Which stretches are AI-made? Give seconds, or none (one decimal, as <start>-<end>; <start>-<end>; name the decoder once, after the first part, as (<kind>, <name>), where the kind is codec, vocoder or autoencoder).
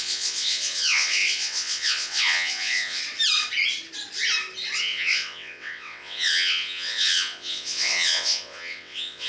0.0-3.0 (vocoder, WaveNeXt); 4.8-9.3